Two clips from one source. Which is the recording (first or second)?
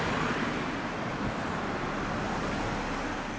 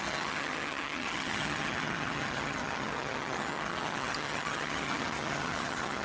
first